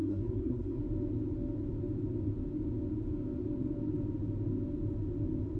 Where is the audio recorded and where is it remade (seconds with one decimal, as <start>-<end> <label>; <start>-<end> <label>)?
0.0-0.8 remade; 0.8-5.6 recorded